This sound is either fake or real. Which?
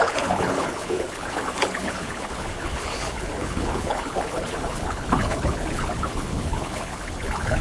fake